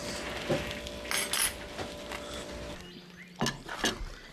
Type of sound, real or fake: real